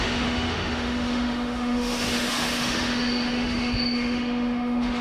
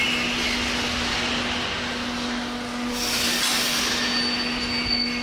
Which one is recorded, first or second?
second